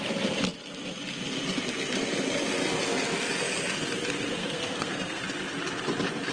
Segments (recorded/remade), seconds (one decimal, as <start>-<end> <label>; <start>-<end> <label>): 0.0-4.4 recorded; 4.4-5.2 remade; 5.2-6.3 recorded